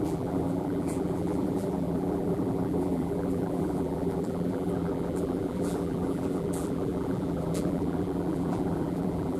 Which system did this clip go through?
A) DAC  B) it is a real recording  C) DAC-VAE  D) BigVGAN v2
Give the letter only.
D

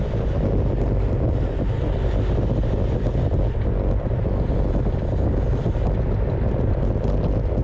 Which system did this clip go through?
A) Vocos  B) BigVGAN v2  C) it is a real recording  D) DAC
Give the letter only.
C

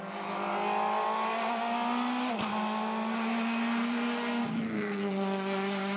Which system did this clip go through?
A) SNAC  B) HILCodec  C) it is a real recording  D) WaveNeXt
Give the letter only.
C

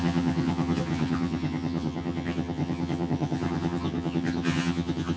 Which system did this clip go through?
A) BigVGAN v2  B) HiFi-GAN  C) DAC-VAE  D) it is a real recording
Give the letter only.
B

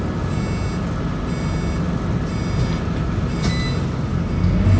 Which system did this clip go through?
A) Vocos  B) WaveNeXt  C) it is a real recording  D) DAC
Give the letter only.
C